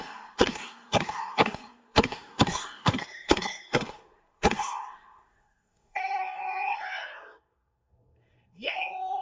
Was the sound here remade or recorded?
remade